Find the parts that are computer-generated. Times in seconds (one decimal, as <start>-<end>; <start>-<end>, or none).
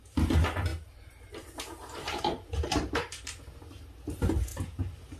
0.7-3.7; 4.5-5.2